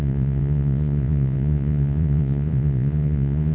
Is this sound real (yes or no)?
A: no